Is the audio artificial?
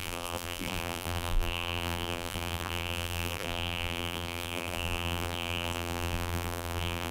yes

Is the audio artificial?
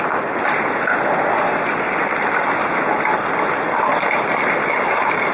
no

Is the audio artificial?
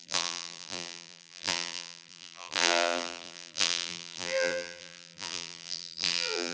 yes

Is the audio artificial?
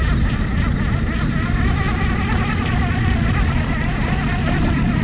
no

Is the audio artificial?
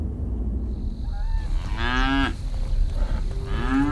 no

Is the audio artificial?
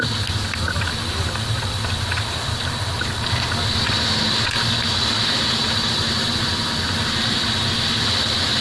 no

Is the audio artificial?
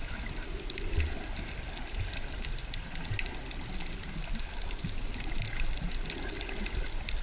no